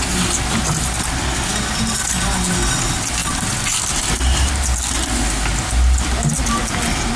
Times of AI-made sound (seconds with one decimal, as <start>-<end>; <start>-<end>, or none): none